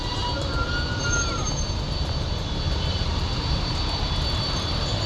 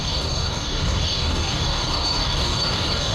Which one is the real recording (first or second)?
first